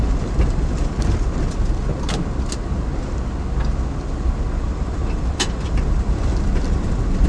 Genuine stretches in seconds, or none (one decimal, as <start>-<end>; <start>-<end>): 0.8-4.6